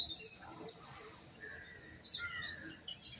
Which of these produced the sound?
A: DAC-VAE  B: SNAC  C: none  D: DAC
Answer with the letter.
C